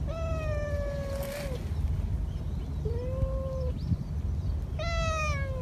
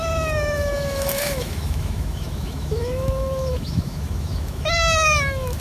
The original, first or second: first